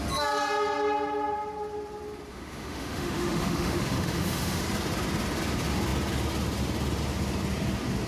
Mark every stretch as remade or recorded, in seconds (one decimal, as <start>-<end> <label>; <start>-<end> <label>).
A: 0.0-2.3 recorded; 2.3-4.6 remade; 4.6-8.1 recorded